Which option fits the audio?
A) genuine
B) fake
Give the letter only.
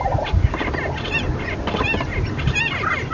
A